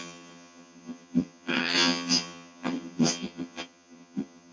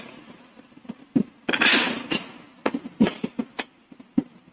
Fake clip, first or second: first